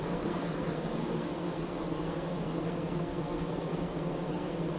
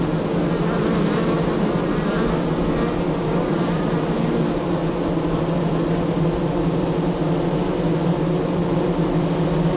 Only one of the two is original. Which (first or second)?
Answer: second